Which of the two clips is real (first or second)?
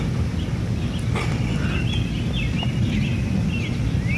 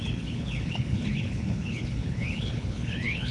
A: first